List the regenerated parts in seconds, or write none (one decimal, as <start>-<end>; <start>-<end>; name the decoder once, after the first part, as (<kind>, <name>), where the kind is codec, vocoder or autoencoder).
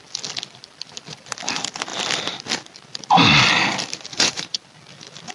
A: 4.1-4.6 (vocoder, Vocos)